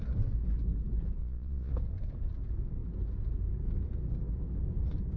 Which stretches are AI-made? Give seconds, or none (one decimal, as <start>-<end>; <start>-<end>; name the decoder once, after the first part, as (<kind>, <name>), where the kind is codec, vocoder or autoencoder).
1.2-1.7 (vocoder, Vocos)